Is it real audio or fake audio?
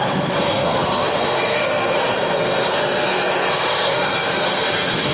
fake